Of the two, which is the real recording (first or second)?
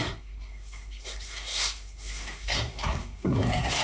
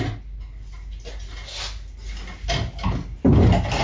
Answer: second